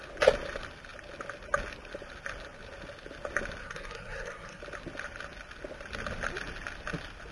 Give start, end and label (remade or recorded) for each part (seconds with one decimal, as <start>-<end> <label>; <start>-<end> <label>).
0.0-3.6 recorded; 3.6-4.6 remade; 4.6-7.3 recorded